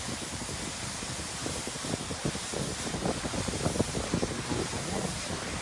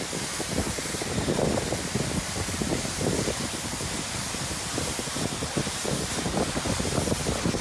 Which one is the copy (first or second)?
second